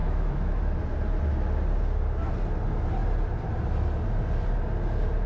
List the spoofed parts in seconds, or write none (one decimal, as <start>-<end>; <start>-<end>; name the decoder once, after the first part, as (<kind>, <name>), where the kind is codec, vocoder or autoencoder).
0.0-0.6 (autoencoder, DAC-VAE)